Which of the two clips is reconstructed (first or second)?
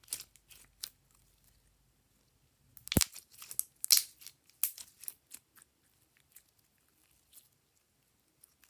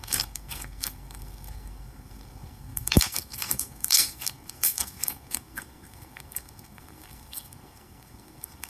second